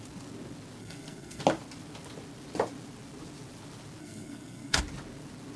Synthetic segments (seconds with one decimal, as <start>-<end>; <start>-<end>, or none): 0.8-1.4; 4.0-4.8